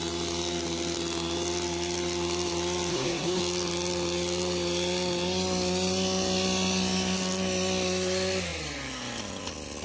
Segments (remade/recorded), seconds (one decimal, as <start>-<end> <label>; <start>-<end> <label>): 0.0-2.9 recorded; 2.9-3.4 remade; 3.4-9.8 recorded

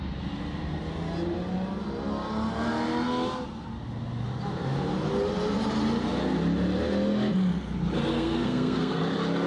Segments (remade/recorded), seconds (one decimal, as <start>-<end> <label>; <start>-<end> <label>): 0.0-8.1 recorded; 8.1-9.0 remade; 9.0-9.5 recorded

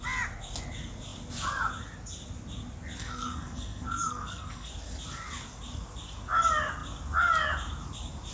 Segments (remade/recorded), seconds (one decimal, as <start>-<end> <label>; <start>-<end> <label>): 0.0-3.0 recorded; 3.0-4.7 remade; 4.7-8.3 recorded

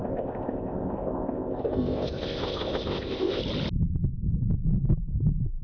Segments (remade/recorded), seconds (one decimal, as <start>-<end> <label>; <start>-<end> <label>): 0.0-3.4 remade; 3.4-5.6 recorded